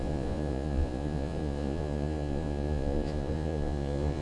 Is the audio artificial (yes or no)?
yes